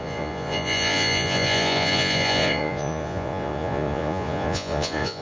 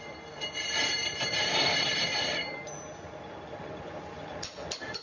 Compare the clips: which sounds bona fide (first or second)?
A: second